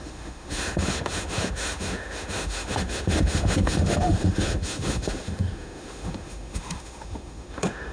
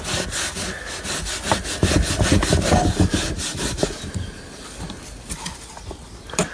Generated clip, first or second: first